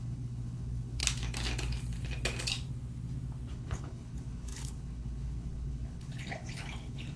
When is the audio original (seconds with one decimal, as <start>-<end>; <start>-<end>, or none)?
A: 1.0-3.5